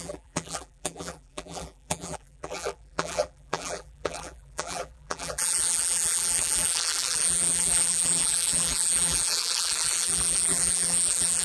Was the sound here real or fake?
fake